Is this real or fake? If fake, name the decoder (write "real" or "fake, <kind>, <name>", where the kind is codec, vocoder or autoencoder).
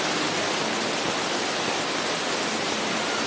real